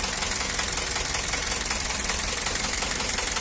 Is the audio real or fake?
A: real